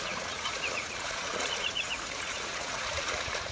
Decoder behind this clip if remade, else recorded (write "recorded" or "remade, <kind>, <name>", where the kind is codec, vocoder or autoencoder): remade, vocoder, Vocos